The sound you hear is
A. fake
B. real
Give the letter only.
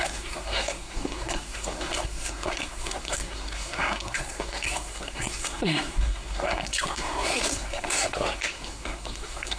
A